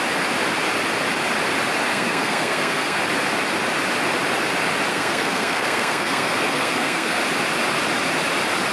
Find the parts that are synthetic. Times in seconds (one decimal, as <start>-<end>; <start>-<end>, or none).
1.9-3.0; 4.9-7.2